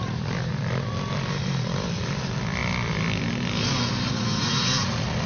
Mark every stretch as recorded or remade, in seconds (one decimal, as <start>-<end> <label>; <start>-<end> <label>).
0.0-2.6 remade; 2.6-4.1 recorded; 4.1-5.3 remade